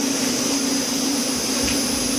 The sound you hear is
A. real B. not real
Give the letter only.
B